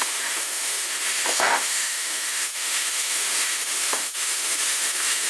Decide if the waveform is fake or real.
fake